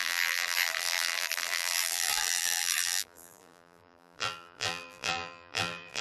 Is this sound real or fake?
fake